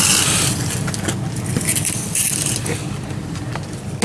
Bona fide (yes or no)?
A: yes